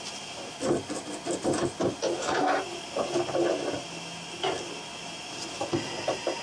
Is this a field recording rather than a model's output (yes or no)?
yes